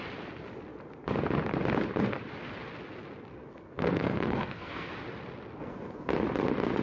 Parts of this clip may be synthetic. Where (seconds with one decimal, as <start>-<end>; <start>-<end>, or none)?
3.3-4.9; 5.6-6.1